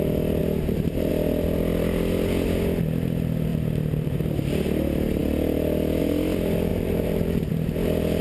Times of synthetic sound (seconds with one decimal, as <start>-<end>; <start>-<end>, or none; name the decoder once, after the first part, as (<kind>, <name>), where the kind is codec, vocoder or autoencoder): 0.4-1.1 (vocoder, BigVGAN v2); 3.5-4.2; 6.7-7.5